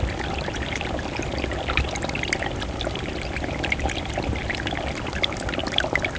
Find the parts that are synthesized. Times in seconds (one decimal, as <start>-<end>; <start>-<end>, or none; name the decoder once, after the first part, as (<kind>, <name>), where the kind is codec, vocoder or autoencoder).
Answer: none